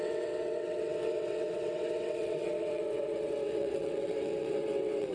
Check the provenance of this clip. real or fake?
fake